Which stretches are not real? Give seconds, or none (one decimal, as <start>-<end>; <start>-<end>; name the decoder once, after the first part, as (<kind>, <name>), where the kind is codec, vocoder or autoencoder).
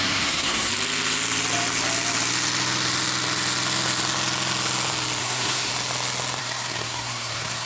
0.0-0.7 (codec, SNAC); 5.2-5.7; 6.4-7.7